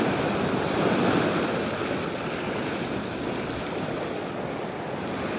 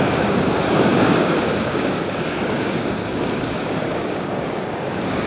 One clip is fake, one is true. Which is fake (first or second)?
second